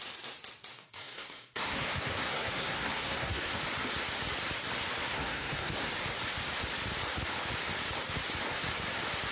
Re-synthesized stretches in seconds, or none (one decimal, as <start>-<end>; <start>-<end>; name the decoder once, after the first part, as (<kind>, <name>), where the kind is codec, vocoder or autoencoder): 0.7-3.6 (codec, SNAC); 5.1-5.9